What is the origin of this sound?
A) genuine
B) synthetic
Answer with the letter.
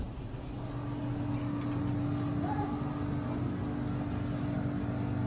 A